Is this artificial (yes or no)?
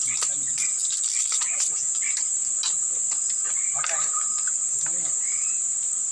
no